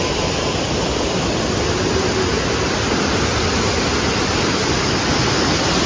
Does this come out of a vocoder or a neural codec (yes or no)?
no